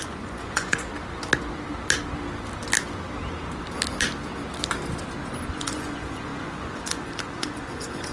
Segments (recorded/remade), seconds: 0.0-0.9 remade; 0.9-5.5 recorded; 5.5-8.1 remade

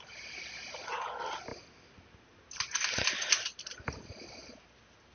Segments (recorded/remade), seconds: 0.0-5.1 recorded

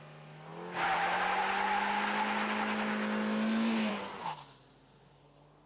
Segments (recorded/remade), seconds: 0.0-5.7 recorded

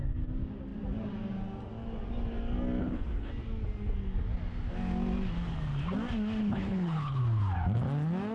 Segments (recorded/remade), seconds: 0.0-2.8 recorded; 2.8-3.3 remade; 3.3-6.4 recorded; 6.4-7.2 remade; 7.2-8.3 recorded

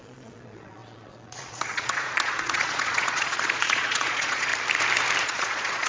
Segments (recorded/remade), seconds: 0.0-4.5 remade; 4.5-5.2 recorded; 5.2-5.9 remade

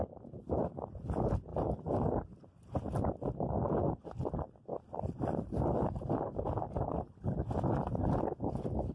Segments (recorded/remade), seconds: 0.0-0.6 remade; 0.6-8.9 recorded

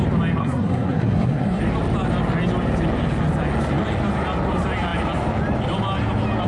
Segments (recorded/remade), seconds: 0.0-0.4 recorded; 0.4-1.6 remade; 1.6-6.5 recorded

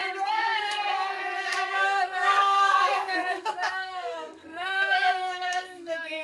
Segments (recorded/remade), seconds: 0.0-6.2 remade